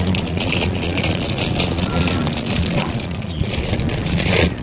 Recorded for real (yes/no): no